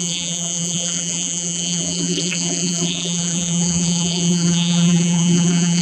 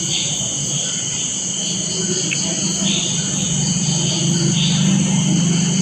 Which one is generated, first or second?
first